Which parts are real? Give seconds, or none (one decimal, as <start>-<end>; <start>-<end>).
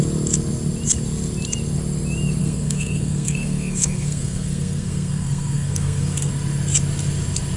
0.0-2.4; 6.3-7.6